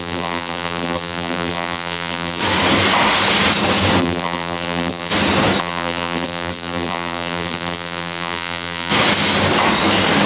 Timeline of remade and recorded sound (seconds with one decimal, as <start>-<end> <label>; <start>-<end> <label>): 0.0-2.4 remade; 2.4-4.0 recorded; 4.0-5.1 remade; 5.1-5.6 recorded; 5.6-8.9 remade; 8.9-10.3 recorded